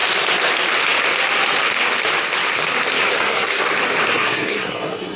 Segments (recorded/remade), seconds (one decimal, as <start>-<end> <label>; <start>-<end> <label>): 0.0-3.1 recorded; 3.1-3.6 remade; 3.6-4.1 recorded; 4.1-5.2 remade